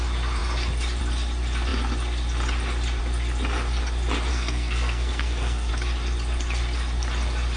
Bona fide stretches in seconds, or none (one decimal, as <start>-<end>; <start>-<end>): 0.0-4.3; 5.7-7.6